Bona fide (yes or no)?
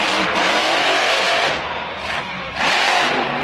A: no